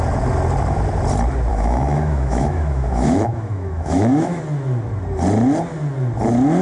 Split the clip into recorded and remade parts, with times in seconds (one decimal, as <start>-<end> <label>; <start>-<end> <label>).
0.0-1.5 recorded; 1.5-4.4 remade; 4.4-6.6 recorded